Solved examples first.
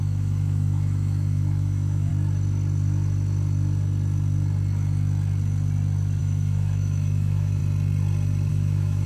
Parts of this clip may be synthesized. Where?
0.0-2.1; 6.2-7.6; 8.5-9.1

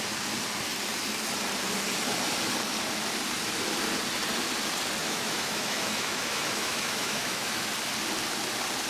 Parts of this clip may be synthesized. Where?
5.0-7.7

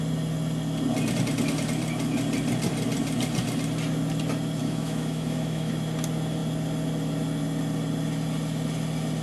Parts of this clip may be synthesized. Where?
4.6-5.7

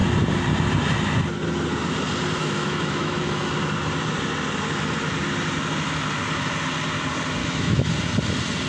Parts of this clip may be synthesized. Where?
2.4-3.5; 7.4-7.9